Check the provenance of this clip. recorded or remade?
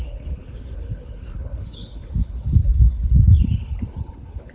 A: remade